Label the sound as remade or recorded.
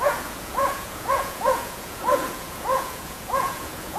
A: remade